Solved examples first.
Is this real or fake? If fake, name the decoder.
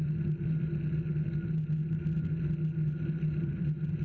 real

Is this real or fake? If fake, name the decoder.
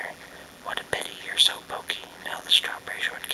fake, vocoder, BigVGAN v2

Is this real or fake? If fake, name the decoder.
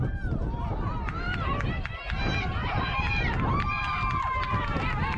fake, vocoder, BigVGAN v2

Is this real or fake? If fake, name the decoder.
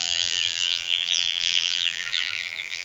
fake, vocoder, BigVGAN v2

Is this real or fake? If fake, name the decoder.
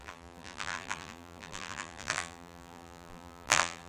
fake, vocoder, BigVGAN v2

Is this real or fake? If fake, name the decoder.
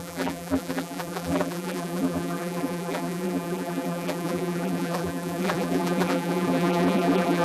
fake, vocoder, BigVGAN v2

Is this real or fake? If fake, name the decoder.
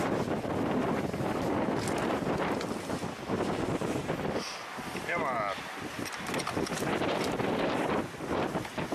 real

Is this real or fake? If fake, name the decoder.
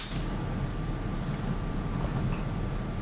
real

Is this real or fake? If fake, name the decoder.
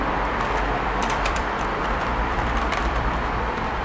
fake, vocoder, BigVGAN v2